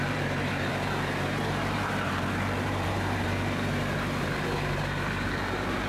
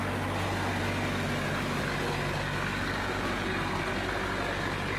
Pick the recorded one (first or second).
second